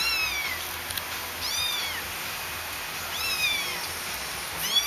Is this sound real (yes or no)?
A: yes